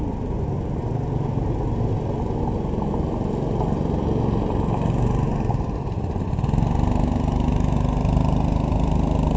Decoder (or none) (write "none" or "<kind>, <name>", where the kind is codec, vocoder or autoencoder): none